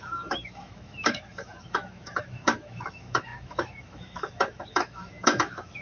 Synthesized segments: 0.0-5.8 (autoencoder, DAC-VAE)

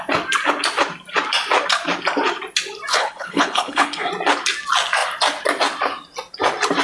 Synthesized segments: 2.9-4.1 (codec, HILCodec)

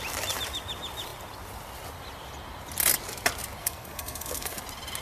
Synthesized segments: 3.6-4.6 (codec, SNAC)

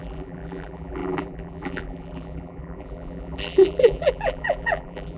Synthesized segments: 0.0-5.2 (vocoder, BigVGAN v2)

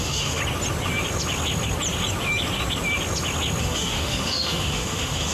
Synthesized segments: 0.0-0.4 (autoencoder, DAC-VAE); 3.6-5.3

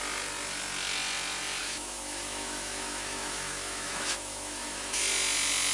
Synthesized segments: 1.6-5.0 (autoencoder, DAC-VAE)

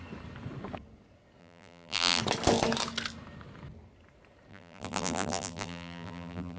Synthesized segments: 1.4-2.2 (vocoder, BigVGAN v2); 4.5-6.6

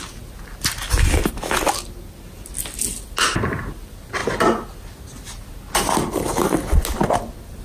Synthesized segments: none